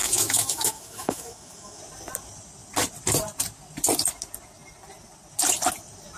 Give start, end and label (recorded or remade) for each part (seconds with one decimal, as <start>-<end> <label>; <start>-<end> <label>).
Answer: 0.0-1.8 remade; 1.8-6.2 recorded